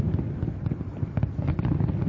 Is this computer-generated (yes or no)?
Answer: no